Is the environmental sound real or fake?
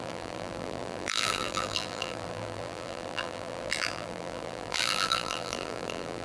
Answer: fake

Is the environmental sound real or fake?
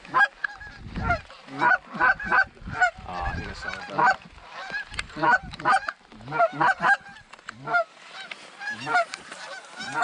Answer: fake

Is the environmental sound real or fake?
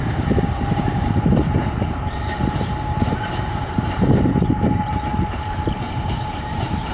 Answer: fake